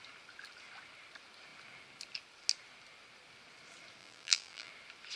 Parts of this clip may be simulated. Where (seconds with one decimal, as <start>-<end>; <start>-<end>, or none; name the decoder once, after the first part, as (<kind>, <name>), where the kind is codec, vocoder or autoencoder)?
4.0-4.7 (vocoder, BigVGAN v2)